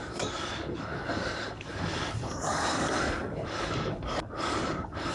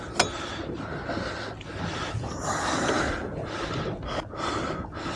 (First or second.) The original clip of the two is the second